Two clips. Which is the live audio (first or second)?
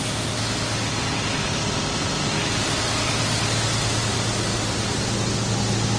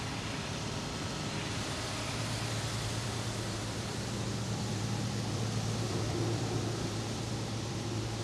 first